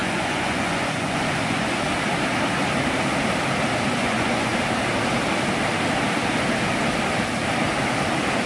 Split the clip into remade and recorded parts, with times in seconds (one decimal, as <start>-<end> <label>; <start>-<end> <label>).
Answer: 0.0-1.8 remade; 1.8-4.0 recorded; 4.0-4.6 remade; 4.6-8.5 recorded